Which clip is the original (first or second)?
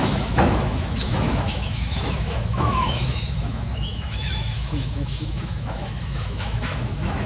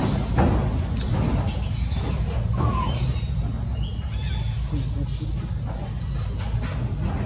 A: second